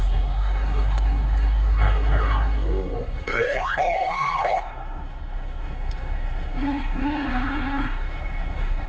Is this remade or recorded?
remade